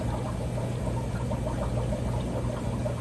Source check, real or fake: real